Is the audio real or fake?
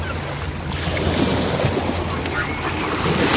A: real